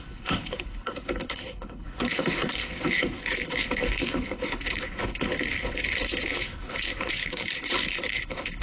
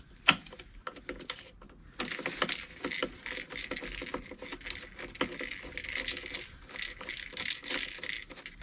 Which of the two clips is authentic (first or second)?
second